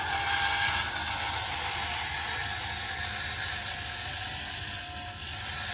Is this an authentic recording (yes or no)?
yes